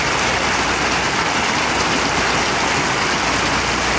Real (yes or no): yes